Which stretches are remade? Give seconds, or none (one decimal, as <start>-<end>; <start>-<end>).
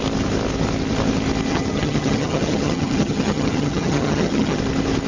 1.5-4.6